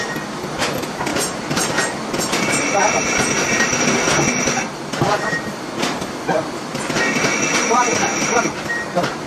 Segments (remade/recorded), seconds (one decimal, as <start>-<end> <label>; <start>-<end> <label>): 0.0-1.1 recorded; 1.1-1.7 remade; 1.7-9.3 recorded